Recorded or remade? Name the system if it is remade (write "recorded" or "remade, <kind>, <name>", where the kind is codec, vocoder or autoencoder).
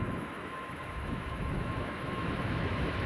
remade, autoencoder, DAC-VAE